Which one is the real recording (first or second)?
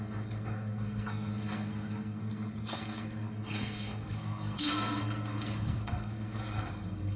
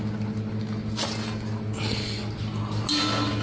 second